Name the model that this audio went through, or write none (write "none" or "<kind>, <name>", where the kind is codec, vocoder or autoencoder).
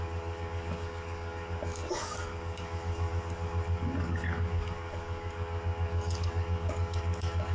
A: codec, DAC